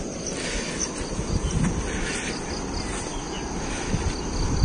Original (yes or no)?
yes